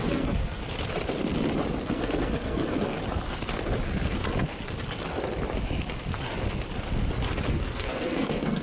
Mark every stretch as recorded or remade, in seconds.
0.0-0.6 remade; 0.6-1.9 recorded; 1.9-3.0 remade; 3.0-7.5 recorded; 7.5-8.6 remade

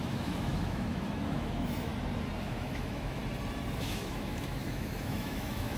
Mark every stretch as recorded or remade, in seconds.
0.0-1.9 remade; 1.9-2.4 recorded; 2.4-3.2 remade; 3.2-3.8 recorded; 3.8-5.8 remade

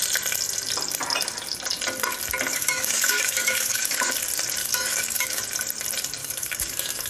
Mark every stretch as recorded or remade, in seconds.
0.0-2.5 recorded; 2.5-4.1 remade; 4.1-4.6 recorded; 4.6-5.4 remade; 5.4-6.2 recorded; 6.2-7.1 remade

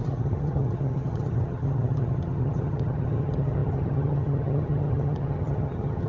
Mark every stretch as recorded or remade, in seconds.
0.0-6.1 remade

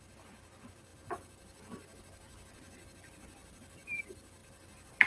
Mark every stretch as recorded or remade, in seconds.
0.0-4.4 recorded; 4.4-5.1 remade

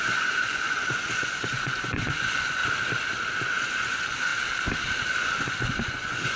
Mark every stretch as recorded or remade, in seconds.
0.0-2.6 remade; 2.6-3.5 recorded; 3.5-4.3 remade; 4.3-5.2 recorded; 5.2-6.4 remade

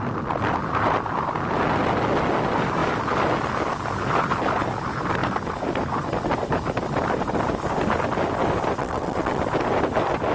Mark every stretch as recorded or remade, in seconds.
0.0-8.8 recorded; 8.8-9.4 remade; 9.4-10.3 recorded

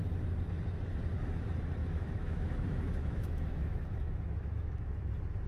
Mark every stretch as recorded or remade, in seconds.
0.0-1.8 recorded; 1.8-5.1 remade; 5.1-5.5 recorded